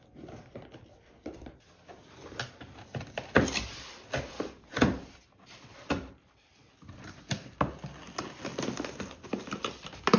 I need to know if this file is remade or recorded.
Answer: recorded